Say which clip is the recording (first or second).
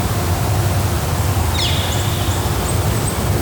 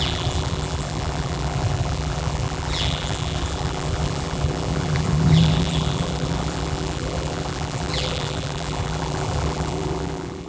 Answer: first